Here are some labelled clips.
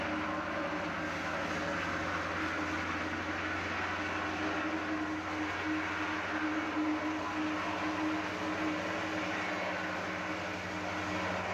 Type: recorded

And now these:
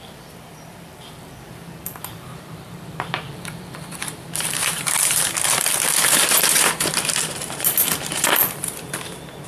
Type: remade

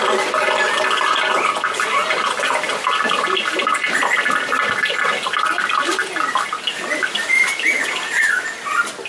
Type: recorded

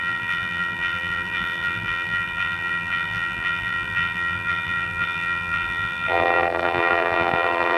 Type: remade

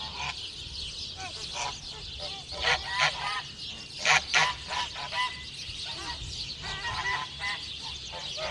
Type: recorded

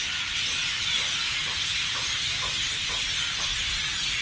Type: recorded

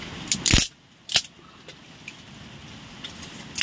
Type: recorded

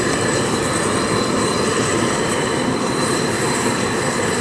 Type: remade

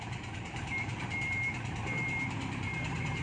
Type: remade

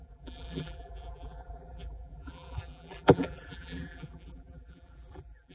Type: remade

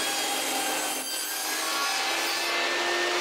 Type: recorded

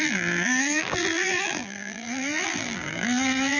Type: remade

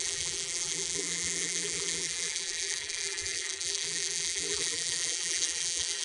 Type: remade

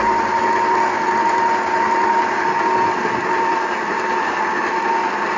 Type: recorded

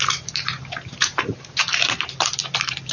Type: remade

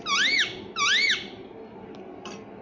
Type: recorded